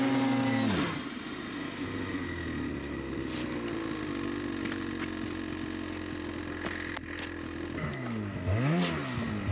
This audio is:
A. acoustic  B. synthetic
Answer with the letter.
A